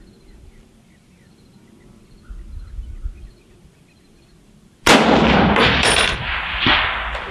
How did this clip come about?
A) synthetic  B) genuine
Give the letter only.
B